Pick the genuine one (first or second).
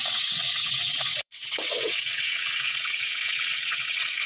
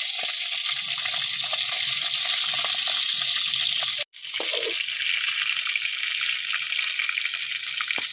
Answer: second